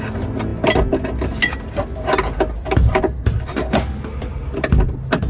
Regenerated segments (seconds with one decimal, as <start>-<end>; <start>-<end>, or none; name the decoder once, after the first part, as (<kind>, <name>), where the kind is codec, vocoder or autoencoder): none